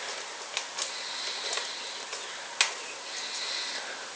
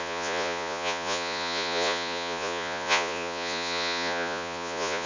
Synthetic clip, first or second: second